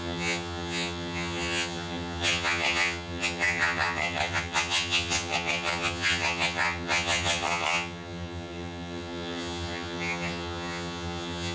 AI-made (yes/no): yes